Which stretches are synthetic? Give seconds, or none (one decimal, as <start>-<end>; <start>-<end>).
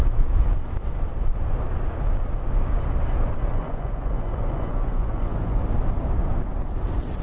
3.5-5.6